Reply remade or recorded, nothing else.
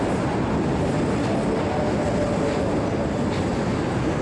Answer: recorded